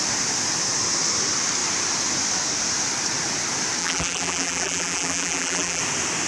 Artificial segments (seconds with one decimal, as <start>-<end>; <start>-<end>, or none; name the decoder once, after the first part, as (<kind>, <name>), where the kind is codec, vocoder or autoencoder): 3.8-5.8 (vocoder, BigVGAN v2)

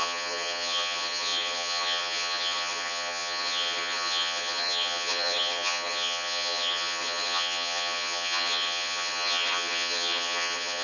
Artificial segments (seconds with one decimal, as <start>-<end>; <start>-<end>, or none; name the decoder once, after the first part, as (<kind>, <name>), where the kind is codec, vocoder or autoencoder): 0.0-10.8 (vocoder, HiFi-GAN)

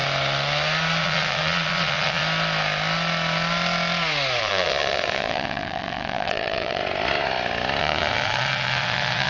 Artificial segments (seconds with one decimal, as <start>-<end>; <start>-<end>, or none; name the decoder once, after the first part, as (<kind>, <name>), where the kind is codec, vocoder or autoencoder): 1.0-2.2 (vocoder, WaveNeXt); 4.4-6.8; 7.8-9.3

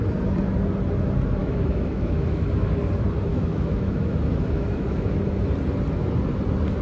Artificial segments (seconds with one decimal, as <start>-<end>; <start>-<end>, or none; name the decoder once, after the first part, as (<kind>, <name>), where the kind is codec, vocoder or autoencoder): 1.4-2.8 (autoencoder, DAC-VAE); 3.3-5.2

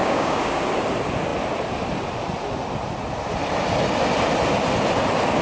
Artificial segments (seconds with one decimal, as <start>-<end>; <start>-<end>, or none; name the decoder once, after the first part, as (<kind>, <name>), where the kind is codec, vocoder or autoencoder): 0.0-0.6 (codec, DAC)

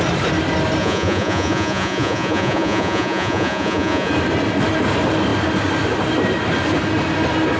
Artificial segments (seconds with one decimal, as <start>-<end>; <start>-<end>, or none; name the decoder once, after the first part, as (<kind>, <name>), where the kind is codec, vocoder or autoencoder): 0.8-4.1 (vocoder, Vocos)

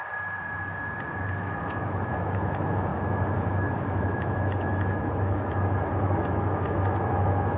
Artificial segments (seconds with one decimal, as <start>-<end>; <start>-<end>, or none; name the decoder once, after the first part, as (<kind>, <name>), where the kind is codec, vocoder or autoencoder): 1.4-7.6 (autoencoder, DAC-VAE)